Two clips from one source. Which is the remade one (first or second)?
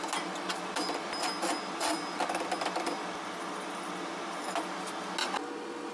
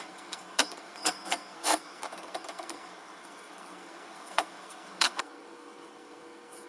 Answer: second